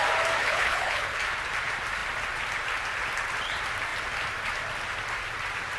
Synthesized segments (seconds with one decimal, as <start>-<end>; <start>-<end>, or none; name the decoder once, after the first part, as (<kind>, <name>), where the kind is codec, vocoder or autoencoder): 0.4-1.2 (codec, HILCodec)